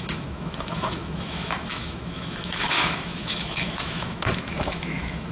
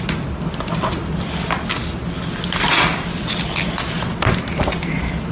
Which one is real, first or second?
second